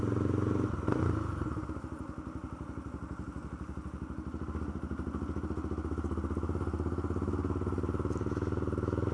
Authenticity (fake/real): real